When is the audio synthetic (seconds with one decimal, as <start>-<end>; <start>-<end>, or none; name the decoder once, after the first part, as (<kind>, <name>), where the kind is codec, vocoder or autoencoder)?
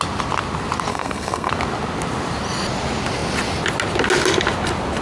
0.9-1.5 (codec, SNAC)